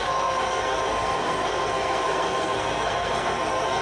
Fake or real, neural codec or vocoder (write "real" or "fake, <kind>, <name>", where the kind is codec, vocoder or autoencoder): fake, codec, SNAC